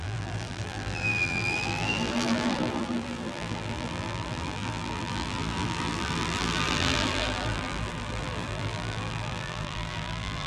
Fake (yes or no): yes